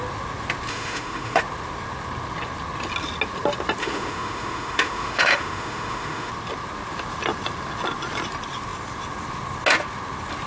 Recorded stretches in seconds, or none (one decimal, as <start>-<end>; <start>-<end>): 0.0-0.7; 1.4-3.8; 6.3-10.5

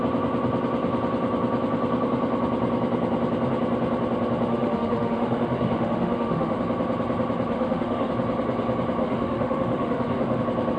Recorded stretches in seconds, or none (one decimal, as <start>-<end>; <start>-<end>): 0.0-4.5; 6.6-7.5; 8.1-9.0; 10.4-10.8

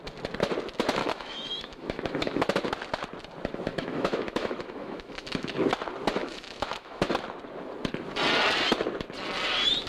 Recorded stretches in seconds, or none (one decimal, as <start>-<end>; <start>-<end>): 0.0-1.0; 2.4-3.7; 5.5-6.2; 7.0-9.9

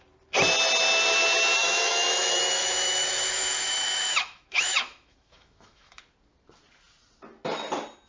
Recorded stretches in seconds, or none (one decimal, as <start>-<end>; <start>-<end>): 0.0-1.6; 6.0-8.1

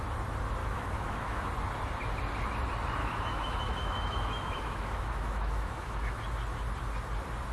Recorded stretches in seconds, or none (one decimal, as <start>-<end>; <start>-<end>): 0.0-0.6; 1.5-3.0; 6.2-7.5